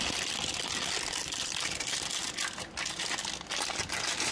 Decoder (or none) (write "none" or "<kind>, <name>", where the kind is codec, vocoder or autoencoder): none